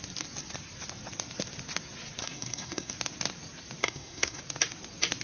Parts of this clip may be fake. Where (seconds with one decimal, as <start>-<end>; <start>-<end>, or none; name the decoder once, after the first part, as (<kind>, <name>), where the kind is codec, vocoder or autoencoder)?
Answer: 2.2-2.9 (codec, SNAC); 3.8-4.4